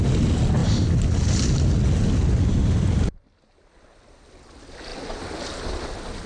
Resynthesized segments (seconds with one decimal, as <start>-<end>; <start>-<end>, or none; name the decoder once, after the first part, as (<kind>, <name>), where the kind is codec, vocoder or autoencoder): none